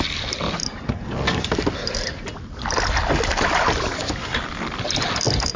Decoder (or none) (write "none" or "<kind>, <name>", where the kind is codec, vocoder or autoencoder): none